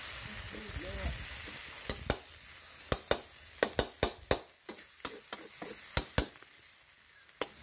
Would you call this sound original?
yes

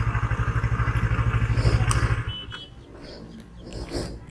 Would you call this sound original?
yes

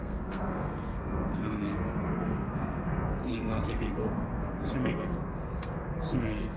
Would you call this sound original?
no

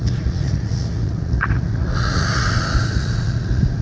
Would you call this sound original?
no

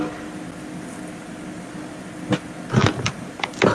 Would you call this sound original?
yes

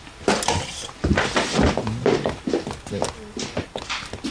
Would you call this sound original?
yes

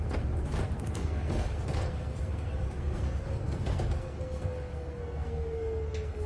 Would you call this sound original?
no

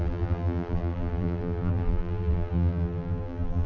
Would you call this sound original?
no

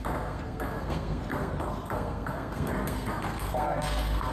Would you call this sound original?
no